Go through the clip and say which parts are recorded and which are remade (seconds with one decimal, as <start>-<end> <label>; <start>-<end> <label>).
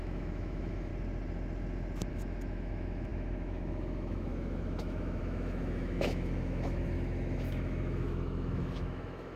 0.0-0.9 remade; 0.9-2.1 recorded; 2.1-9.4 remade